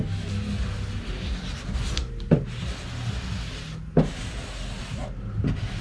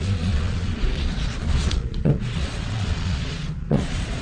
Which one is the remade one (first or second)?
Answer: second